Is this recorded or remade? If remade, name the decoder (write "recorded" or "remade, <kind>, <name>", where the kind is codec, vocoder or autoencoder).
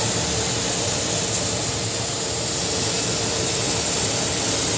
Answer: recorded